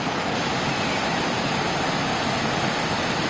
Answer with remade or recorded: recorded